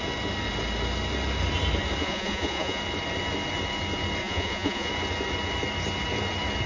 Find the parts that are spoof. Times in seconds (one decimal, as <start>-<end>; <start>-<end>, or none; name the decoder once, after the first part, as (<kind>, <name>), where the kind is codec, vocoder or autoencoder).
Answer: 2.0-2.8 (vocoder, Vocos); 4.2-4.9